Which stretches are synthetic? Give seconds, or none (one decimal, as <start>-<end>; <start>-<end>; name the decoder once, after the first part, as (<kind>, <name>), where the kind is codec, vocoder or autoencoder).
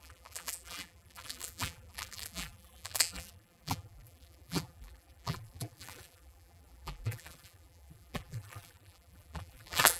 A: 0.0-10.0 (vocoder, BigVGAN v2)